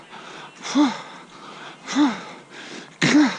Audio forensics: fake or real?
real